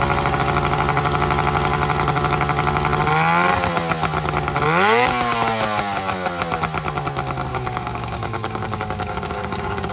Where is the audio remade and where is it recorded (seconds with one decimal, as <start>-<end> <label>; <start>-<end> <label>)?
0.0-7.5 recorded; 7.5-9.9 remade